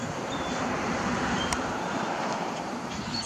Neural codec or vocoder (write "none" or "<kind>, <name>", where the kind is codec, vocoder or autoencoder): vocoder, BigVGAN v2